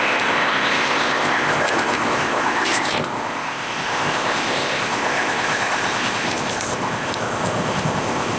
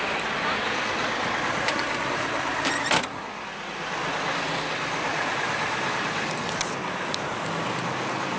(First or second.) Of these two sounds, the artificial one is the first